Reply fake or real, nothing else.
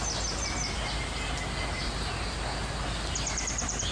real